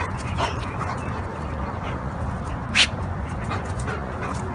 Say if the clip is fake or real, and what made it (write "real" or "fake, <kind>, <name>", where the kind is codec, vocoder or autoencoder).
fake, vocoder, Vocos